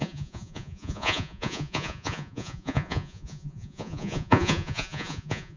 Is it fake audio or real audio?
fake